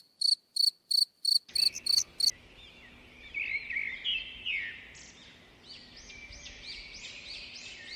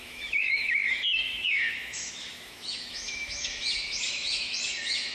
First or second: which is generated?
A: second